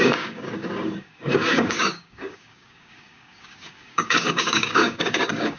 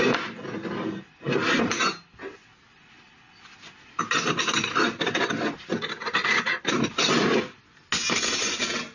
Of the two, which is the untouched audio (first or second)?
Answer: second